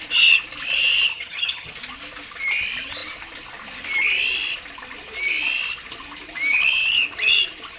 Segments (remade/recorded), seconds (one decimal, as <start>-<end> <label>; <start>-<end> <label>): 0.0-1.1 recorded; 1.1-1.7 remade; 1.7-7.8 recorded